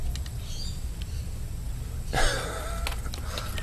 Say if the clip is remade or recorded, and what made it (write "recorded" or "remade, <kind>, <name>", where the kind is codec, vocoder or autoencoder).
recorded